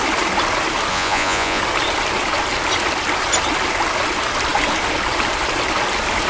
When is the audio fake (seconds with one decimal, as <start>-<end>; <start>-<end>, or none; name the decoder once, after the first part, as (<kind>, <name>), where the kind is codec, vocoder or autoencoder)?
0.9-1.6 (vocoder, Vocos)